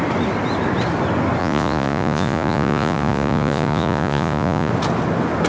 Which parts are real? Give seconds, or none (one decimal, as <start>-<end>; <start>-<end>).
0.0-1.4; 4.7-5.5